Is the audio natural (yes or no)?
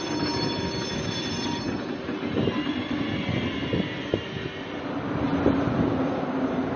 yes